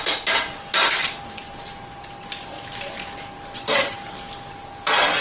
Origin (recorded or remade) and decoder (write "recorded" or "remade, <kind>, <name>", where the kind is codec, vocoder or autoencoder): recorded